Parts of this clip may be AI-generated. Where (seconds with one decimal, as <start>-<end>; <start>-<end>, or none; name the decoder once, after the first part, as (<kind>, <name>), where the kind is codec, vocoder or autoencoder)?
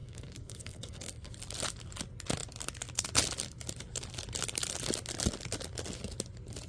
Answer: 0.0-1.3 (codec, SNAC)